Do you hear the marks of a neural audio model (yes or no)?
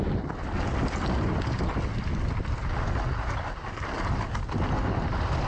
no